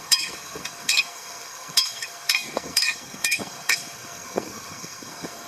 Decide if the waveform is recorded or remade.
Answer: remade